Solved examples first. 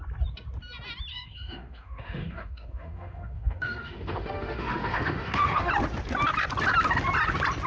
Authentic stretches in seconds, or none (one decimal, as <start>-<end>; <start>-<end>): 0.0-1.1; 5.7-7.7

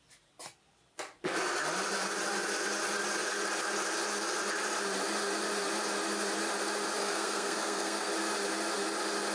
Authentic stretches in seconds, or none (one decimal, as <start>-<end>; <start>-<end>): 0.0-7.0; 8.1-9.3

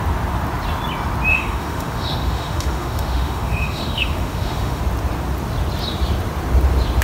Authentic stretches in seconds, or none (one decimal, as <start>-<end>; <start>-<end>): 0.0-1.3; 4.8-7.0

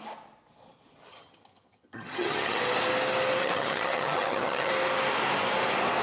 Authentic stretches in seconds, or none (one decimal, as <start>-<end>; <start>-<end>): 0.0-1.1; 2.6-3.4; 4.7-6.0

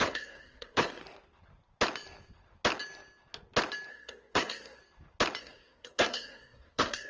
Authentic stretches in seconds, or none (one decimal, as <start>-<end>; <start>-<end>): 1.0-3.9; 4.8-5.4

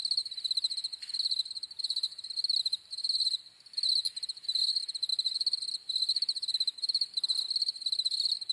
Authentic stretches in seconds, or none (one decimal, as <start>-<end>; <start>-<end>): 0.0-0.9; 1.8-5.1; 5.9-8.5

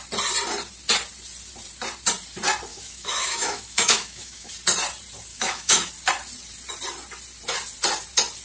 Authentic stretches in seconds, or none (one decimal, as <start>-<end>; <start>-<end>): 0.0-2.7; 4.5-5.3; 5.9-8.4